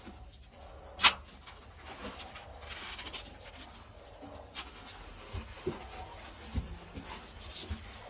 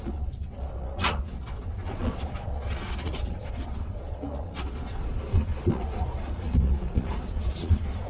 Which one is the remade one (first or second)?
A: second